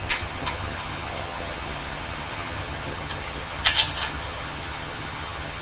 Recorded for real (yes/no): no